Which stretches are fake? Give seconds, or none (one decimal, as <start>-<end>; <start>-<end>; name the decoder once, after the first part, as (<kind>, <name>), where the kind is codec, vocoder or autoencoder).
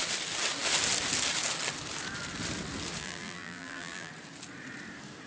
3.0-4.1 (vocoder, BigVGAN v2)